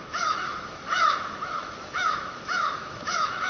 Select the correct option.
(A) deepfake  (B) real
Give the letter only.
A